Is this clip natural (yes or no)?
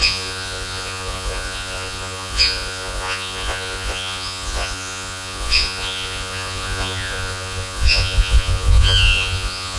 no